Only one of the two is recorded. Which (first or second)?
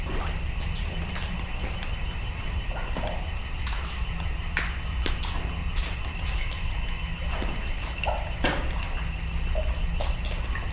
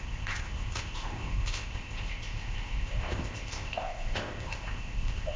first